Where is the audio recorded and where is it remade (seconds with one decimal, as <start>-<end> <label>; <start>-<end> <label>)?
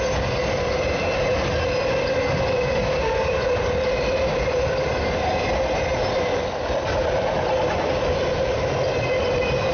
0.0-9.7 recorded